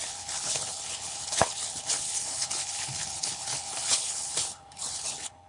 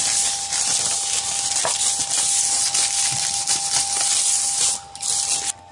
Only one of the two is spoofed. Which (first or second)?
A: first